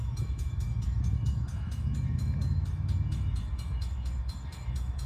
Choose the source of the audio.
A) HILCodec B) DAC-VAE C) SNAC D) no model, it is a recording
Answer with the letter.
B